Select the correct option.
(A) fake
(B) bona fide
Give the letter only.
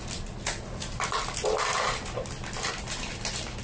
B